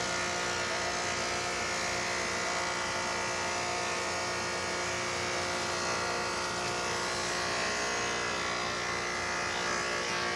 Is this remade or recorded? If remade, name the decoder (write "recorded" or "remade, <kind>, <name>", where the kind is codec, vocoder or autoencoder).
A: recorded